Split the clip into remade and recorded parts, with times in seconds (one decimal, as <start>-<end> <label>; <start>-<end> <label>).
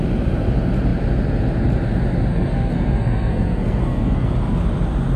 0.0-2.3 recorded; 2.3-4.3 remade; 4.3-5.2 recorded